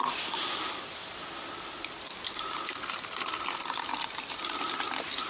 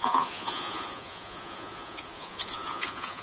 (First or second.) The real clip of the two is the first